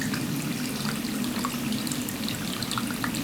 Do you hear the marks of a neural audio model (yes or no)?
no